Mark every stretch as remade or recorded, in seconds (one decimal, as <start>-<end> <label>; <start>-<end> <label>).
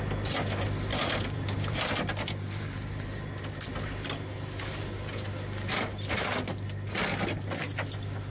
0.0-0.9 recorded; 0.9-2.6 remade; 2.6-8.3 recorded